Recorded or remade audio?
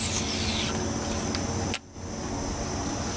recorded